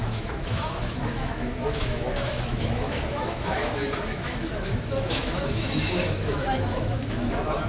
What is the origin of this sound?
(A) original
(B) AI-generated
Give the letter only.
B